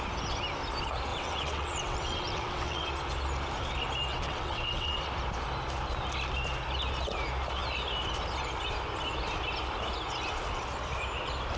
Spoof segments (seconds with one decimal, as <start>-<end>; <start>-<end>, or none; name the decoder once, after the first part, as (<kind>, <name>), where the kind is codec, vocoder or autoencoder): 1.1-2.9 (vocoder, WaveNeXt); 4.1-5.1